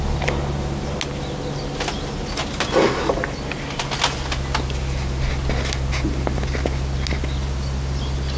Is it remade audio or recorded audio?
recorded